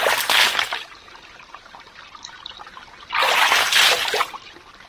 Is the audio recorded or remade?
recorded